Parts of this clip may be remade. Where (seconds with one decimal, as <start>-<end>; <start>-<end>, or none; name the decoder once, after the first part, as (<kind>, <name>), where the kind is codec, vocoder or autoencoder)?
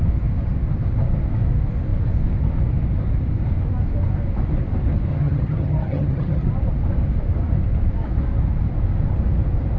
5.1-6.5 (vocoder, HiFi-GAN)